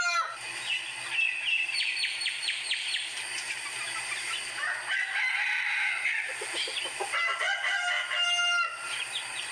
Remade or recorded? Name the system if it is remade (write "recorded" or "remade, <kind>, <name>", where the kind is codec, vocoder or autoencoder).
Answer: recorded